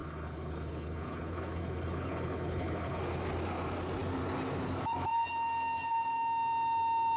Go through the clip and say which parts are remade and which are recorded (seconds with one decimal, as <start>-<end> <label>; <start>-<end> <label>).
0.0-3.0 remade; 3.0-7.2 recorded